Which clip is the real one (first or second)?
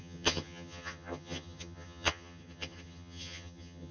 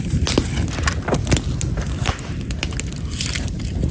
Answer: second